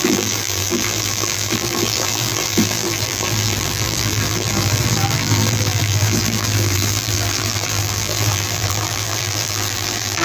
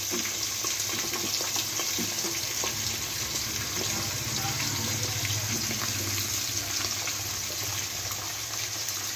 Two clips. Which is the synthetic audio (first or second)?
first